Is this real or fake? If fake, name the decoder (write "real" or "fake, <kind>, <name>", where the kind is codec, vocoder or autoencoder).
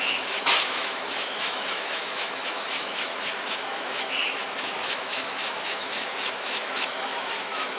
fake, autoencoder, DAC-VAE